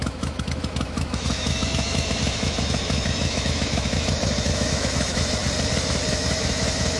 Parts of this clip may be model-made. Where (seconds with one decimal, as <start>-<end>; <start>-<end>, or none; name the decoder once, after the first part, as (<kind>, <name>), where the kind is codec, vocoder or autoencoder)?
0.0-5.4 (autoencoder, DAC-VAE); 6.1-7.0